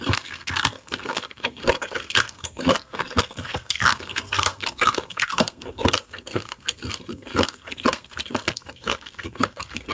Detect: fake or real fake